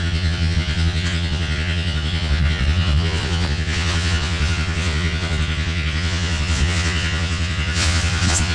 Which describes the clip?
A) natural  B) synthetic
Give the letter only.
B